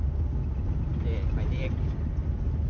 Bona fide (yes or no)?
yes